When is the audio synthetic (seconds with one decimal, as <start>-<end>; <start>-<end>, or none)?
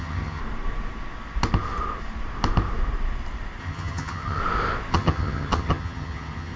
0.0-0.4; 3.6-4.4; 4.9-6.6